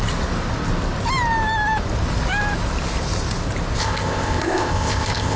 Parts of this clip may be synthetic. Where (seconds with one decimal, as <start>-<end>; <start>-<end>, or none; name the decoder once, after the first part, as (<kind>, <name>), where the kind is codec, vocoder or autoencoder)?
3.8-5.4 (codec, ZipCodec)